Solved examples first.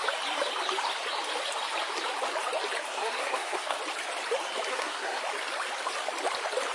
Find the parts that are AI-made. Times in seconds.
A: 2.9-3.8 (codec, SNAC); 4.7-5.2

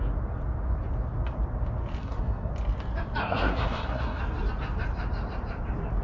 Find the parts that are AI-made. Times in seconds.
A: 2.0-2.5 (codec, SNAC); 3.2-4.2

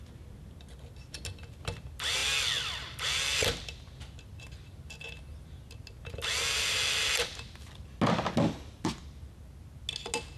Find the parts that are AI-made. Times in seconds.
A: none

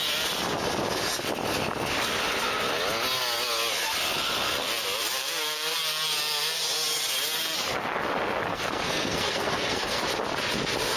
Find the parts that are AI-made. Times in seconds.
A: 8.5-10.0 (codec, SNAC)

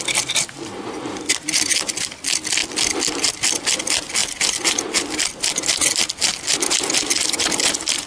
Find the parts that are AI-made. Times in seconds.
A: none

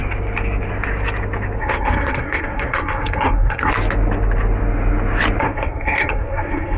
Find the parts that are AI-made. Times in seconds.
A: 1.6-3.7 (codec, SNAC); 5.4-6.8

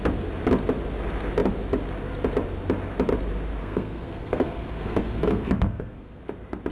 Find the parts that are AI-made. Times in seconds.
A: 3.6-6.2 (codec, SNAC)

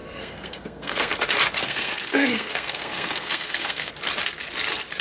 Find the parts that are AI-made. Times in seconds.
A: 0.0-1.1 (codec, SNAC); 1.6-3.9